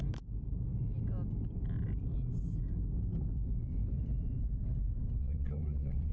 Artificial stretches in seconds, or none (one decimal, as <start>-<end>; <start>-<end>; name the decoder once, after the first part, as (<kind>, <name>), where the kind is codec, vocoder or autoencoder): 5.2-6.1 (vocoder, Vocos)